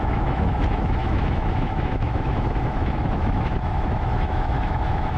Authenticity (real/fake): fake